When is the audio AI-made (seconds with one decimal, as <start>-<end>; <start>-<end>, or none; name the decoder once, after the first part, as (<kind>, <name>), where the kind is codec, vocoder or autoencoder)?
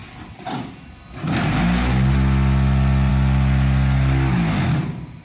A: none